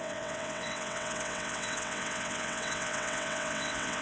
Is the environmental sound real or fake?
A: fake